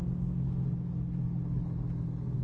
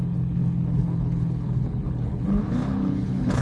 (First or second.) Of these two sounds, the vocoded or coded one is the second